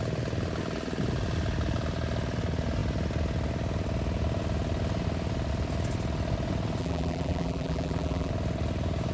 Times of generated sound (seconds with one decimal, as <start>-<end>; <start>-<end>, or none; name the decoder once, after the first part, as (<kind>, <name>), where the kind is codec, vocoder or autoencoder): 6.8-8.3 (vocoder, BigVGAN v2)